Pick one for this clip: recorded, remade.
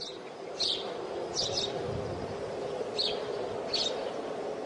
recorded